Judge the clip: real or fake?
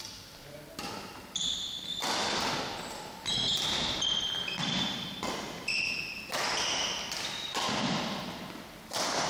real